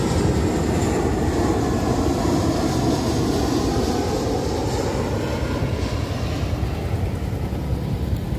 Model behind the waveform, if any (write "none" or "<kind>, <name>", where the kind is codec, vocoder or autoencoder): none